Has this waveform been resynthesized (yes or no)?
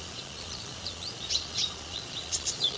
yes